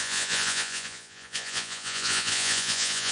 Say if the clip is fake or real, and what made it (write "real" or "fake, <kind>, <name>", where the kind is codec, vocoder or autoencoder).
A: fake, vocoder, Vocos